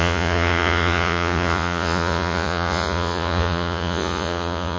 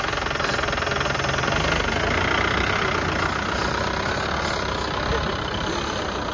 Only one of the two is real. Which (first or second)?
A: second